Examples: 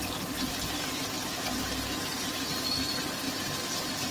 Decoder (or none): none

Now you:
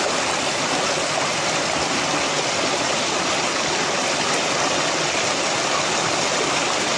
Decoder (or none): none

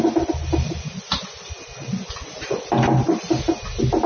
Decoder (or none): none